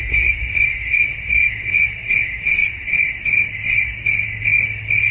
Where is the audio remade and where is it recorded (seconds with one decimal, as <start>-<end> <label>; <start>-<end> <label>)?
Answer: 0.0-5.1 recorded

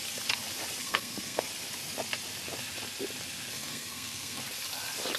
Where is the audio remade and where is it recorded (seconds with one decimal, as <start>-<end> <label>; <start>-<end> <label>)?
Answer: 0.0-0.8 recorded; 0.8-1.4 remade; 1.4-3.5 recorded; 3.5-4.4 remade; 4.4-5.2 recorded

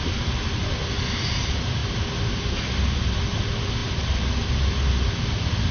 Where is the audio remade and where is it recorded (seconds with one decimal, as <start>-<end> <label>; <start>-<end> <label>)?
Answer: 0.0-5.7 recorded

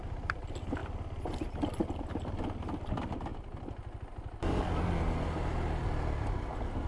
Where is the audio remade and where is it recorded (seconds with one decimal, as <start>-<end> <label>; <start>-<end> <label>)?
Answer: 0.0-3.3 recorded; 3.3-4.6 remade; 4.6-6.9 recorded

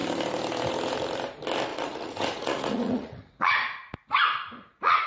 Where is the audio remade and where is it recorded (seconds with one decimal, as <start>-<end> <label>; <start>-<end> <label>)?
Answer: 0.0-1.7 recorded; 1.7-5.1 remade

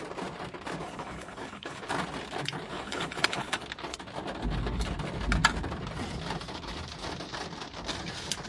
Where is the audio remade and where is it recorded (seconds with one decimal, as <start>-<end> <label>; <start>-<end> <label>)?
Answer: 0.0-0.8 recorded; 0.8-1.8 remade; 1.8-2.7 recorded; 2.7-3.6 remade; 3.6-8.5 recorded